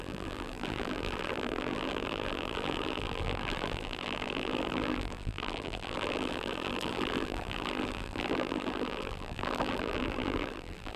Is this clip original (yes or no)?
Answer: no